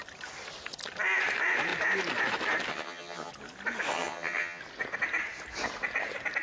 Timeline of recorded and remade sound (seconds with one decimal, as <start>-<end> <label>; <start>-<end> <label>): 0.0-2.7 recorded; 2.7-3.3 remade; 3.3-3.9 recorded; 3.9-4.6 remade; 4.6-6.4 recorded